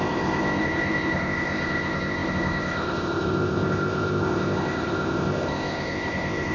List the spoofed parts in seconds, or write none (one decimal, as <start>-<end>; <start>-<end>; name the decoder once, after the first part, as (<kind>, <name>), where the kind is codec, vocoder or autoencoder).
0.0-6.5 (codec, ZipCodec)